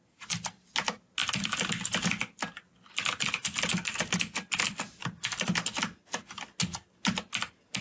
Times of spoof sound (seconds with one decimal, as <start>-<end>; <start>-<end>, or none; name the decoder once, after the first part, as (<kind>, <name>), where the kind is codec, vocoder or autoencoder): none